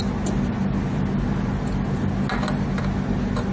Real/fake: real